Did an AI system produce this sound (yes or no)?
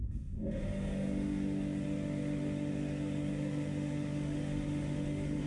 yes